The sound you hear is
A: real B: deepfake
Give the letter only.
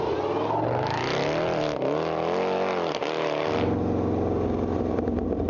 A